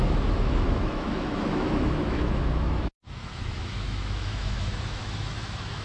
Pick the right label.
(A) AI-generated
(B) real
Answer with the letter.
A